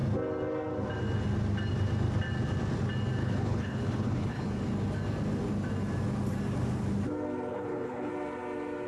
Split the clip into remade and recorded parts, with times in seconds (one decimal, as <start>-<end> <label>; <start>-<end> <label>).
0.0-3.2 recorded; 3.2-4.6 remade; 4.6-7.5 recorded; 7.5-8.1 remade; 8.1-8.9 recorded